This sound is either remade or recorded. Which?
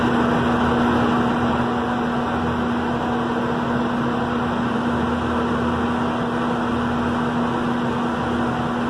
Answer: recorded